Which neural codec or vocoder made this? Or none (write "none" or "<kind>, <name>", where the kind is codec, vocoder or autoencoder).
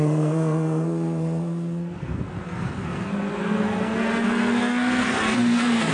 codec, SNAC